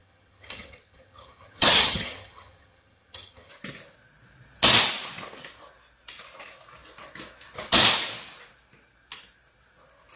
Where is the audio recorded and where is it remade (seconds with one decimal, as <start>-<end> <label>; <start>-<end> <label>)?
0.0-3.5 remade; 3.5-10.2 recorded